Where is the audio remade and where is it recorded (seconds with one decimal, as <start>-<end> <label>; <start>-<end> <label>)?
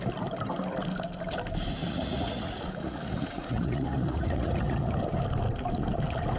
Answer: 0.0-1.8 recorded; 1.8-4.9 remade; 4.9-6.4 recorded